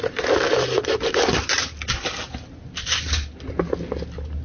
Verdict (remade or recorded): recorded